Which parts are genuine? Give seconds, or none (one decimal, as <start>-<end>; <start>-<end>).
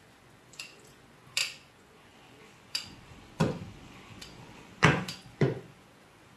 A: none